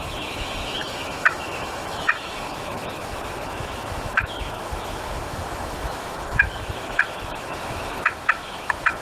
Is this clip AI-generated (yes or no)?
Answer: yes